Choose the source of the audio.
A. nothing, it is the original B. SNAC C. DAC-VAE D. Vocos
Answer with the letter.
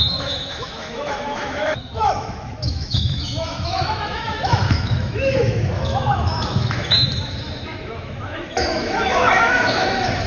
C